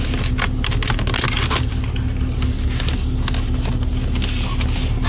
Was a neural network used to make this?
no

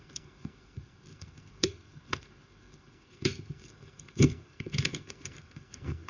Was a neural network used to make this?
yes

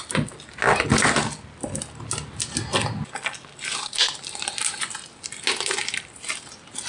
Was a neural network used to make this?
no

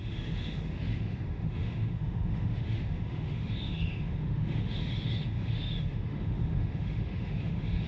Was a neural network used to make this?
yes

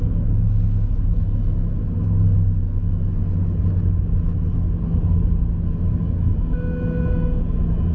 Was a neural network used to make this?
no